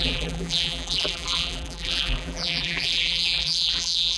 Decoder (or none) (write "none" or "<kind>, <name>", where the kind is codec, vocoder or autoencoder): vocoder, BigVGAN v2